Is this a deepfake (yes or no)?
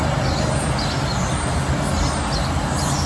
no